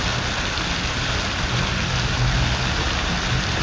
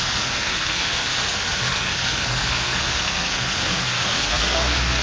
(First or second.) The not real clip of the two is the second